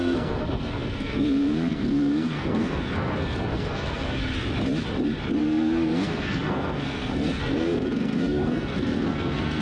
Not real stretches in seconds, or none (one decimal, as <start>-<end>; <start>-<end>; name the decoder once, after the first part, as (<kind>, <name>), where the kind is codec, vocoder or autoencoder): 0.0-4.2 (codec, SNAC); 5.4-9.6